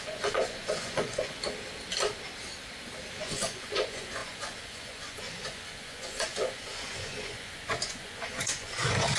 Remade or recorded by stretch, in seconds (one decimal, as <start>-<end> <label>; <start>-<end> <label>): 0.0-1.4 remade; 1.4-3.2 recorded; 3.2-9.2 remade